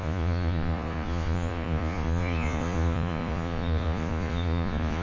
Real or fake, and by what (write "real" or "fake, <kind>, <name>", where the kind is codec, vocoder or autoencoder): fake, vocoder, Vocos